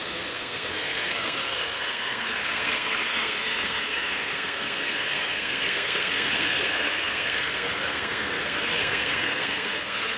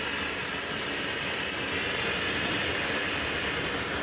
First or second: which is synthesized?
first